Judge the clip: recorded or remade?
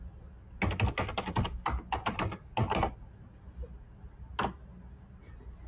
recorded